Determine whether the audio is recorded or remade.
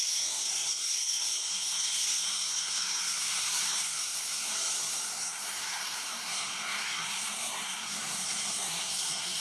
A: remade